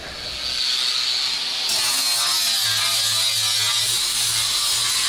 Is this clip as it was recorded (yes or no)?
yes